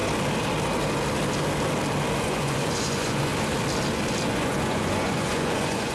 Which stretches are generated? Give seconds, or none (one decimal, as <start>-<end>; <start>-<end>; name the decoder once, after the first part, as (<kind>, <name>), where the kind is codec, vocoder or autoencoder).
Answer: 2.2-3.3 (vocoder, Vocos); 4.3-5.9